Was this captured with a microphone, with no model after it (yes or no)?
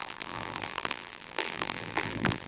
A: no